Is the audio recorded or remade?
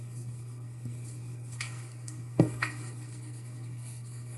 remade